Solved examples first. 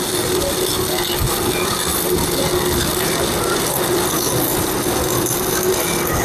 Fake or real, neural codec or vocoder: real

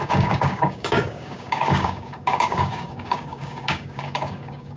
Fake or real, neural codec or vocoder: fake, codec, DAC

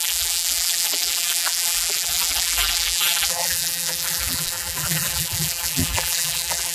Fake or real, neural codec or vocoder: fake, vocoder, BigVGAN v2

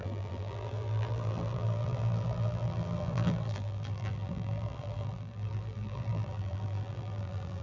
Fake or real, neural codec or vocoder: fake, vocoder, BigVGAN v2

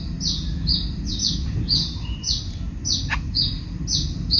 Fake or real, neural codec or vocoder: real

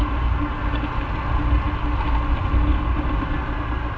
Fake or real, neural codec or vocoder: real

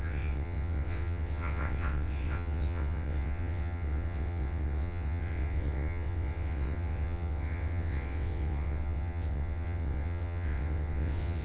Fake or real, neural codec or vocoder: fake, vocoder, WaveNeXt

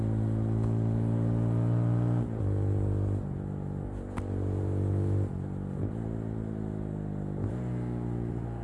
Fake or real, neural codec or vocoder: real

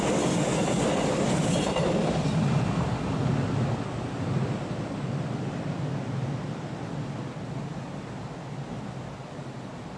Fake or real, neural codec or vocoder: real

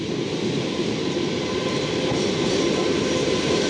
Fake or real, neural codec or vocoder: real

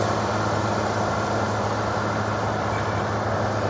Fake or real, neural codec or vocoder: real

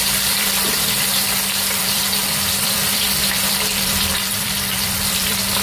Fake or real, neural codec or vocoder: fake, vocoder, BigVGAN v2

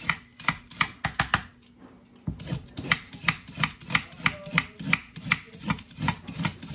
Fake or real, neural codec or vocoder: real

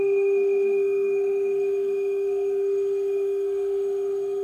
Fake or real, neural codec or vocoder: fake, codec, SNAC